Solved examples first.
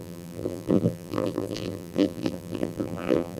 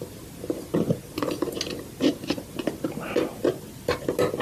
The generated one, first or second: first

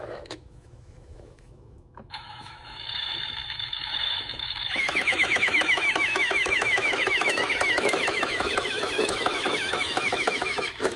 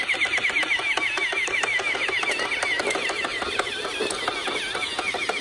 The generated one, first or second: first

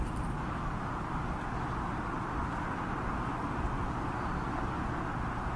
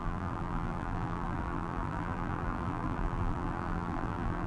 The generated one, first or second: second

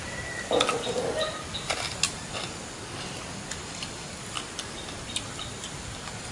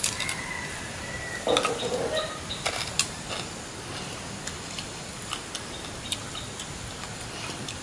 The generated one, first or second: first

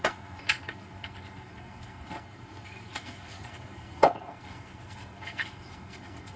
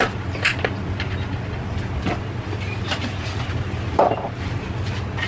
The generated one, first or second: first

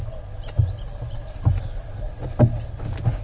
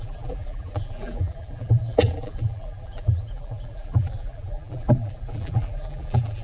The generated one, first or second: second